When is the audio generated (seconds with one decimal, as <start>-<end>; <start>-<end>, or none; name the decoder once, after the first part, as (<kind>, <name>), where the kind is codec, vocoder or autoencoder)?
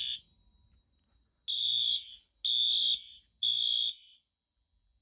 none